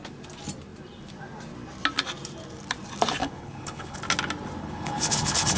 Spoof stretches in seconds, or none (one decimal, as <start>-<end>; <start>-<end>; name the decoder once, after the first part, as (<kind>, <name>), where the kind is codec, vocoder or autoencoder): 3.2-4.0 (codec, HILCodec); 4.6-5.6